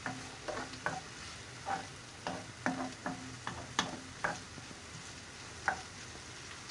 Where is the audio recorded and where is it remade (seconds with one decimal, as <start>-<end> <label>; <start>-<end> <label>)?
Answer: 0.0-6.7 recorded